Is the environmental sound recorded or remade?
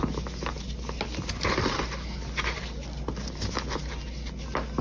recorded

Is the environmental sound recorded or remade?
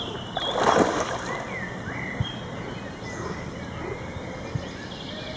recorded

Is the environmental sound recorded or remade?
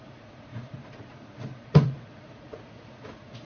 remade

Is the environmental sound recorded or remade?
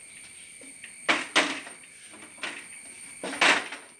recorded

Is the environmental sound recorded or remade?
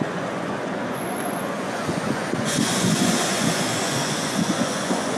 remade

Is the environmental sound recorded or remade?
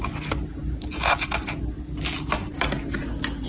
recorded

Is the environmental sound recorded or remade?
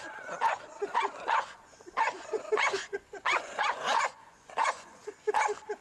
remade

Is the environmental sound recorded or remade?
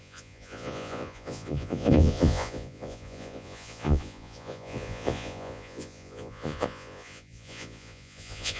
remade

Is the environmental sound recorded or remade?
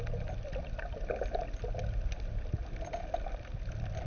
recorded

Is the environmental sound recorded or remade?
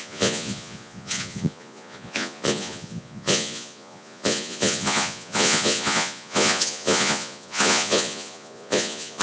remade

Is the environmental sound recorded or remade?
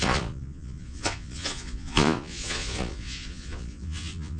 remade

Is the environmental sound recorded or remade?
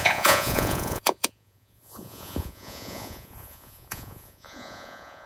remade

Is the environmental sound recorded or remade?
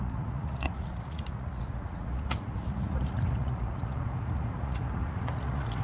remade